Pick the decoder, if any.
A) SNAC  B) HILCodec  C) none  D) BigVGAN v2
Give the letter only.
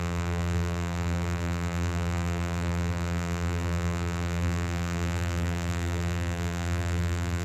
D